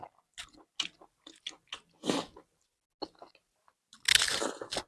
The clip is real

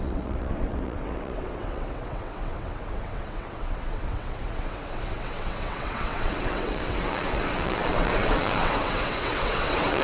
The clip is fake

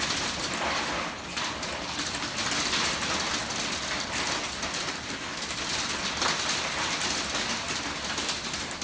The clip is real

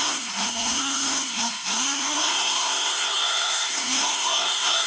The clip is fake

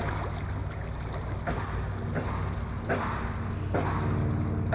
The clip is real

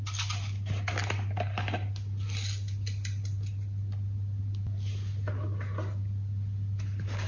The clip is real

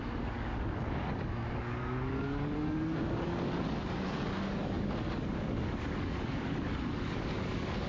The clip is fake